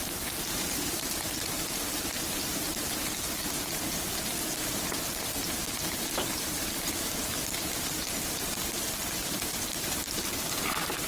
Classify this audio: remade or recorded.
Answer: remade